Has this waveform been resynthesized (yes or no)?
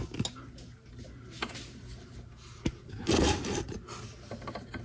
no